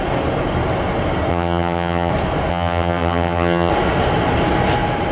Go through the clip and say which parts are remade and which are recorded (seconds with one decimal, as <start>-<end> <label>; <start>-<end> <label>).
0.0-1.3 recorded; 1.3-2.1 remade; 2.1-2.5 recorded; 2.5-3.7 remade; 3.7-5.1 recorded